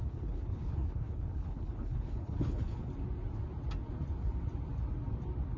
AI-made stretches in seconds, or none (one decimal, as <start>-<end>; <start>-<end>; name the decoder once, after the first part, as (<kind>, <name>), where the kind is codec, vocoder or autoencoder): 0.0-2.9 (codec, HILCodec)